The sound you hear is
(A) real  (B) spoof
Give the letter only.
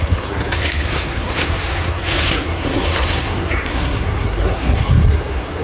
B